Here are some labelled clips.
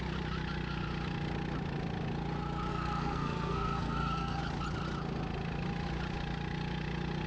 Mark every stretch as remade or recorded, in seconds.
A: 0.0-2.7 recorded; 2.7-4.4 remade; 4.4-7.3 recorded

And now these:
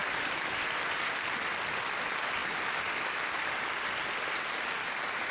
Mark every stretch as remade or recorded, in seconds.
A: 0.0-2.4 recorded; 2.4-4.7 remade; 4.7-5.3 recorded

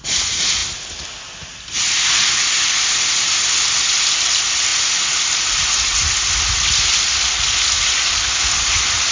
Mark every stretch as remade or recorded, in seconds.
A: 0.0-9.1 recorded

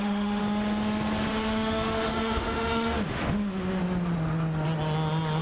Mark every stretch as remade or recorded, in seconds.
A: 0.0-0.4 remade; 0.4-1.3 recorded; 1.3-3.8 remade; 3.8-5.4 recorded

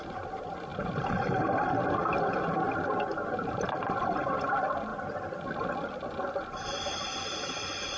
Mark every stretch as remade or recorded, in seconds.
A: 0.0-8.0 recorded

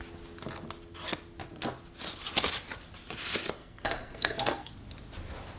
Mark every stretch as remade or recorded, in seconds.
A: 0.0-3.6 recorded; 3.6-4.7 remade; 4.7-5.6 recorded